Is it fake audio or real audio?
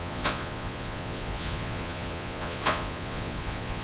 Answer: fake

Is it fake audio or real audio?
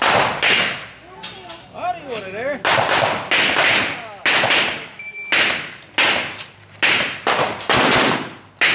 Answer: real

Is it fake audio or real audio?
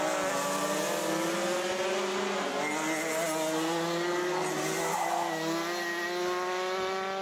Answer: real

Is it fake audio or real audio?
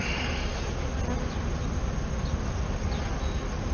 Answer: real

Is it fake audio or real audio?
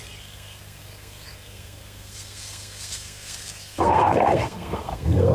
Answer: fake